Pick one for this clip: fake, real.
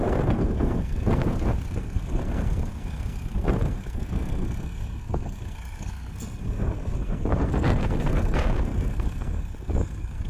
fake